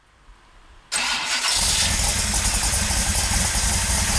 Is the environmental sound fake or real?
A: real